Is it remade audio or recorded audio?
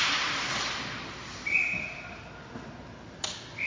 recorded